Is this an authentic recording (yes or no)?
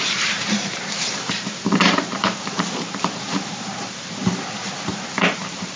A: no